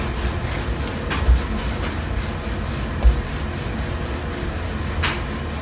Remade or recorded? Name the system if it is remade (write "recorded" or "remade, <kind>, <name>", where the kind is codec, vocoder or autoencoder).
recorded